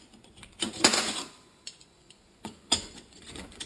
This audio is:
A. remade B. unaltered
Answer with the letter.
A